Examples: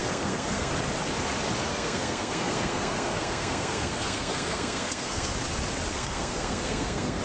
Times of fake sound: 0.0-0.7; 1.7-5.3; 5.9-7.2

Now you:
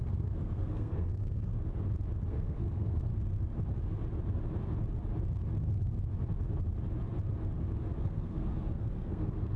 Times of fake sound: 0.0-1.5; 2.3-3.1; 8.0-9.6

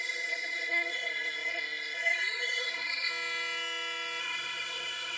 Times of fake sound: 0.0-3.1; 4.2-5.2

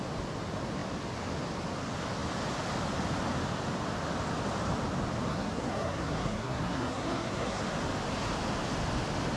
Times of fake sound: 5.3-7.6

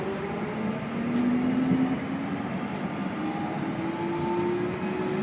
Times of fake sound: none

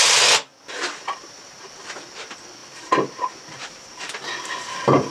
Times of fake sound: none

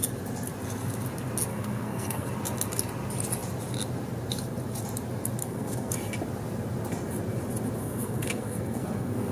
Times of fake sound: 1.5-2.3; 5.4-5.9; 7.8-9.3